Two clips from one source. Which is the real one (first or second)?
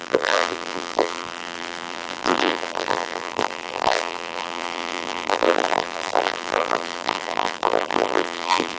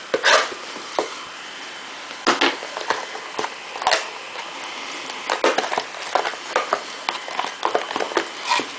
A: second